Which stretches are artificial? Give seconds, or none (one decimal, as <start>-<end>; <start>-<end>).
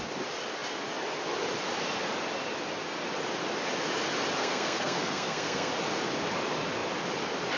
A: 4.4-5.7